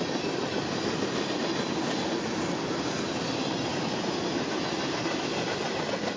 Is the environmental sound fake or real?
real